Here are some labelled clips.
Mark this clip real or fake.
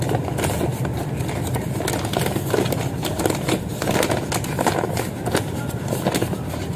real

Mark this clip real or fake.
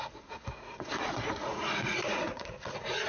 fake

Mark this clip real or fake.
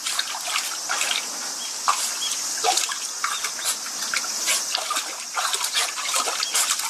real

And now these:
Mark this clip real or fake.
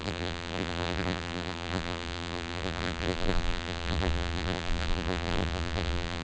fake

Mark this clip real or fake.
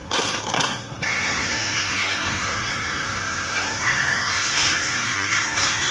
fake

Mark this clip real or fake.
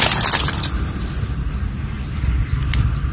real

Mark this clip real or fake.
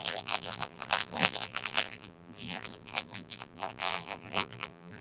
fake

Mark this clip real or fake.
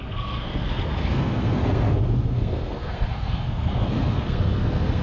fake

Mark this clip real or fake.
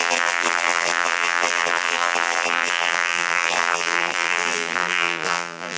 fake